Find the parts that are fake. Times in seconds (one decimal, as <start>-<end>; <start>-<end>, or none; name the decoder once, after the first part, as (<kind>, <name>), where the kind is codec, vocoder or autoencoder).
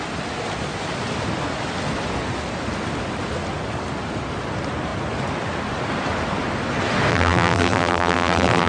7.1-8.7 (vocoder, BigVGAN v2)